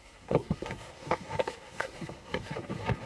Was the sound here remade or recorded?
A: remade